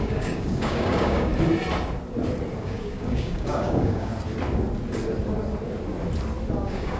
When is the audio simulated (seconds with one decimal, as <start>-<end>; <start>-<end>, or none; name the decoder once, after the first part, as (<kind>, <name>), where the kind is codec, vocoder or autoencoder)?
0.0-1.3 (codec, DAC); 2.6-4.1; 6.6-7.0